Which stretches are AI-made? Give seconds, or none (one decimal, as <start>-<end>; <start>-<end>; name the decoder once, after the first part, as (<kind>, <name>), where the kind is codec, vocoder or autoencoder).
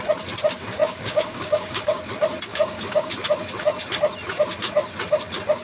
0.8-2.0 (codec, DAC); 2.5-3.1